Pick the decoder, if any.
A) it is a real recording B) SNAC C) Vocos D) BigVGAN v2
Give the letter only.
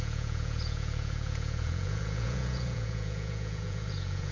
C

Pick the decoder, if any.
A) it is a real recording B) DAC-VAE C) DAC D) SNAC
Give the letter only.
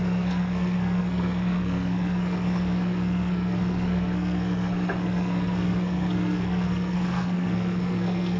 D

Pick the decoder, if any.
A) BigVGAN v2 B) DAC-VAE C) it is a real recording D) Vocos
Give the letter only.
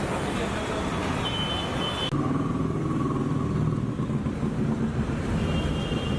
C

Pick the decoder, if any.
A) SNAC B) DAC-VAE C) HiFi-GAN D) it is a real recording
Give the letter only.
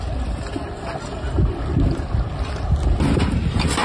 D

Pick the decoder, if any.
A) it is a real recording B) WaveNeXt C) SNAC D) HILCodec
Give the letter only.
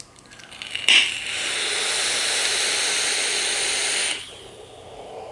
A